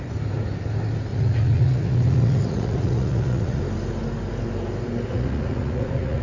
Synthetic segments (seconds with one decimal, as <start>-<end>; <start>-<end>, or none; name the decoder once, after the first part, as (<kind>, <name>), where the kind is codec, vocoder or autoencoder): 1.1-3.6 (vocoder, Vocos); 5.1-6.2